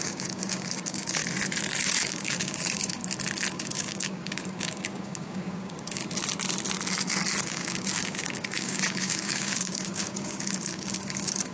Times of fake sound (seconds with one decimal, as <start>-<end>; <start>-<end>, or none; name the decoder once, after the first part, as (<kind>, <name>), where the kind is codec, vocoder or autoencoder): 0.0-1.2 (codec, DAC); 1.8-3.0; 3.5-6.0; 7.4-11.5